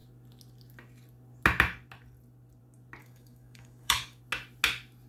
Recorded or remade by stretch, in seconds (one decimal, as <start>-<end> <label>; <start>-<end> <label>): 0.0-3.0 recorded; 3.0-4.2 remade; 4.2-5.1 recorded

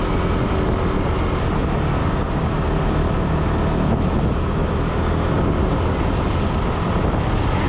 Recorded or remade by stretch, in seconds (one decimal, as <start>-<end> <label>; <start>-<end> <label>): 0.0-2.0 recorded; 2.0-2.5 remade; 2.5-7.7 recorded

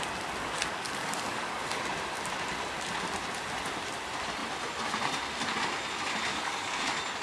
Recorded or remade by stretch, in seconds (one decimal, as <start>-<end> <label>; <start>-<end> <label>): 0.0-0.4 recorded; 0.4-1.8 remade; 1.8-6.3 recorded; 6.3-6.8 remade; 6.8-7.2 recorded

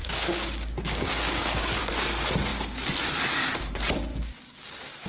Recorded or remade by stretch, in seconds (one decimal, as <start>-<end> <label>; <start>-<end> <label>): 0.0-1.9 remade; 1.9-4.1 recorded; 4.1-5.1 remade

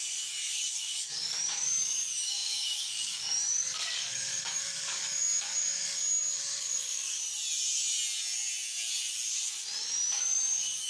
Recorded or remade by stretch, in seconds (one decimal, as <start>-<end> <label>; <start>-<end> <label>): 0.0-7.2 remade; 7.2-10.1 recorded; 10.1-10.9 remade